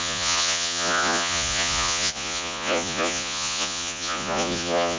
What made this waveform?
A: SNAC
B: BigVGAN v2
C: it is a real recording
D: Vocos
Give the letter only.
D